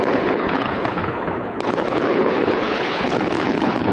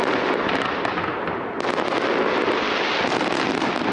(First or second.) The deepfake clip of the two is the first